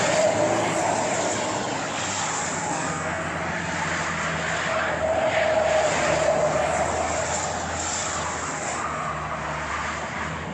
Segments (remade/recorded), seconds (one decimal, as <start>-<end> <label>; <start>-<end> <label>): 0.0-2.7 recorded; 2.7-3.2 remade; 3.2-10.5 recorded